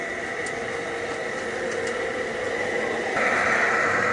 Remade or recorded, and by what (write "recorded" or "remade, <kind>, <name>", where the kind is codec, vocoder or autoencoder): recorded